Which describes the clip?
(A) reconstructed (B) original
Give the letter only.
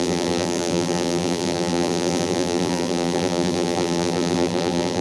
A